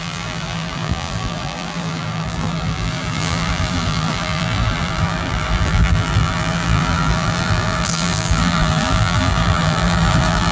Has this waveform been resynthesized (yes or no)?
yes